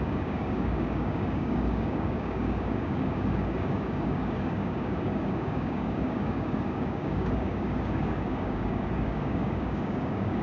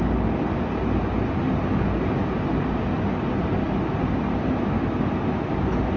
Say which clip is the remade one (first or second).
first